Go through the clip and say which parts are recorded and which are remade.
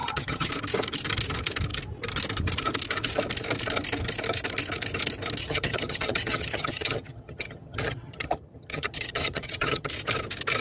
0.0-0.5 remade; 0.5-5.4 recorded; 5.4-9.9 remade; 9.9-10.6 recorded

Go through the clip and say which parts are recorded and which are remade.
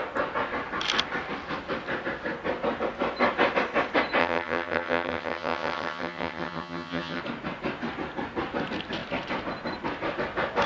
0.0-4.2 recorded; 4.2-7.2 remade; 7.2-10.7 recorded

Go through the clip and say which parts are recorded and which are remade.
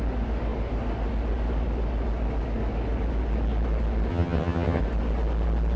0.0-4.1 recorded; 4.1-4.8 remade; 4.8-5.8 recorded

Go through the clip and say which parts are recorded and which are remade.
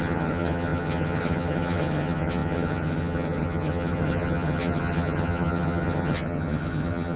0.0-7.2 remade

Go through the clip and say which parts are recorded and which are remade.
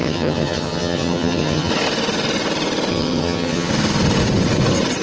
0.0-1.7 remade; 1.7-2.9 recorded; 2.9-3.7 remade; 3.7-5.0 recorded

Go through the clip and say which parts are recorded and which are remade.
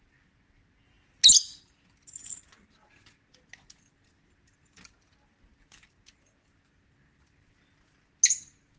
0.0-8.8 recorded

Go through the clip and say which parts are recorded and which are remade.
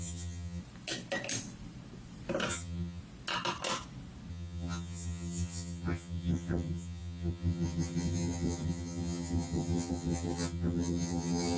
0.0-0.6 remade; 0.6-2.5 recorded; 2.5-3.0 remade; 3.0-4.3 recorded; 4.3-11.6 remade